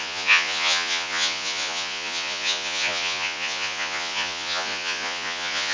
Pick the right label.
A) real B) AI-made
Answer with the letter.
B